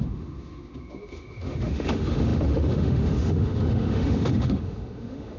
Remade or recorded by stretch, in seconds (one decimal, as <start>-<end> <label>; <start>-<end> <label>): 0.0-5.4 remade